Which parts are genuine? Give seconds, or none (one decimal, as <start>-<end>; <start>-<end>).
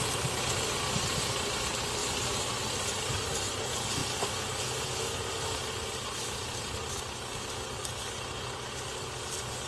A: 0.0-2.0; 3.0-9.7